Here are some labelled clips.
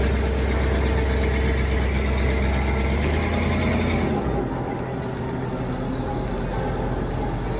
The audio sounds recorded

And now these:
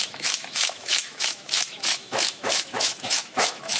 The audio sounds remade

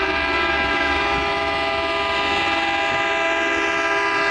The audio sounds recorded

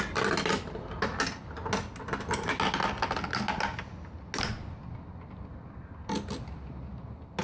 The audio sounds recorded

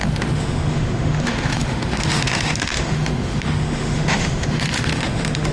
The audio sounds remade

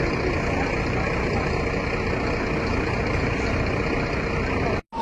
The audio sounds recorded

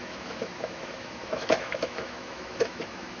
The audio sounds remade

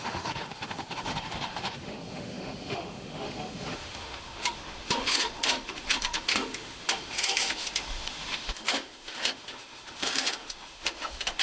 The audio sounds remade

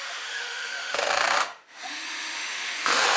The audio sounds remade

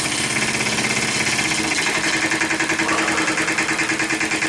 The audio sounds recorded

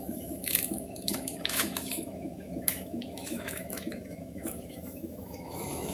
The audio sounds remade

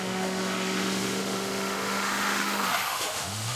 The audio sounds remade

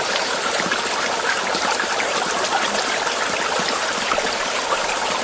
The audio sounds recorded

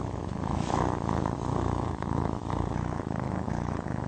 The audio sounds remade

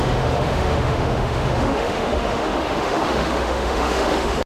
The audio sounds remade